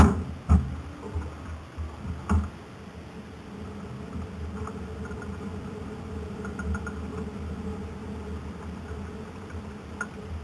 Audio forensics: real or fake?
real